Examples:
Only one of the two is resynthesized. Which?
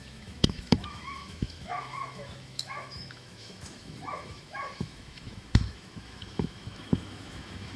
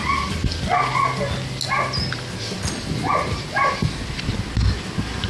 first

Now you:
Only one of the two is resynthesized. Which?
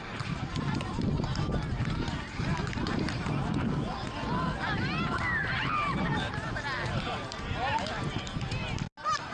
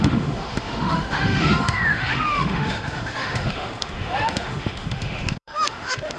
second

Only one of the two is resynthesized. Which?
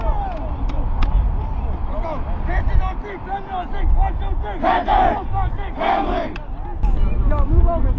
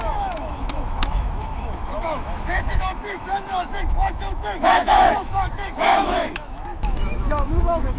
second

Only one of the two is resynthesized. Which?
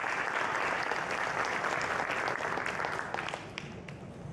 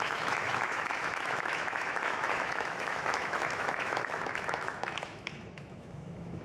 second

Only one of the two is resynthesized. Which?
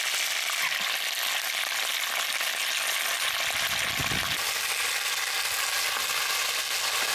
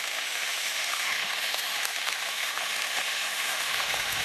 second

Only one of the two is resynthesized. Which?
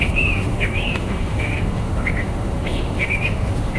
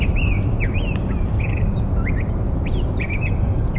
first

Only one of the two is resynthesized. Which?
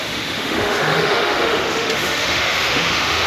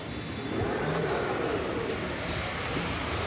first